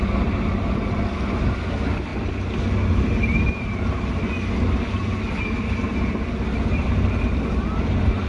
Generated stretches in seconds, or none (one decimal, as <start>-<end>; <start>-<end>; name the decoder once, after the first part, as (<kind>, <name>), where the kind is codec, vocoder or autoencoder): none